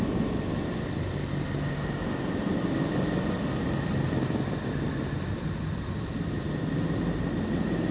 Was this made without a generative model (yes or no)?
yes